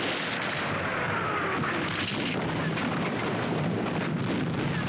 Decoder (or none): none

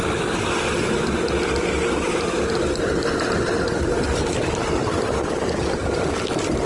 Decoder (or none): none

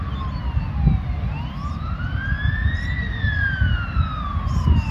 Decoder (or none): none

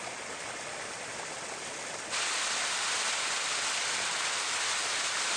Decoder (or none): none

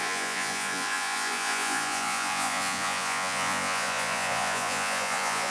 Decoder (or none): vocoder, Vocos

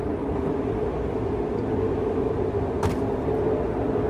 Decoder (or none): none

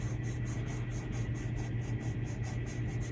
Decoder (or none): none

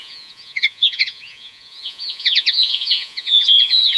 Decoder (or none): vocoder, Vocos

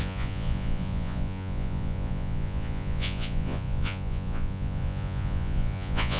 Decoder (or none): vocoder, Vocos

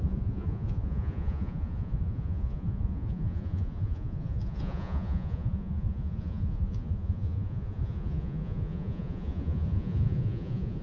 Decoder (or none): vocoder, Vocos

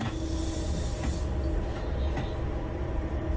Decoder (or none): none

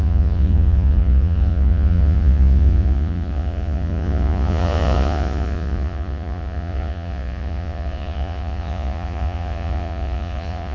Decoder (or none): vocoder, Vocos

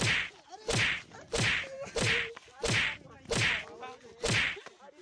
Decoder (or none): none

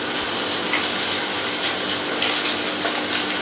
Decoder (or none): none